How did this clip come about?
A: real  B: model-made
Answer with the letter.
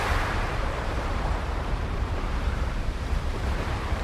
B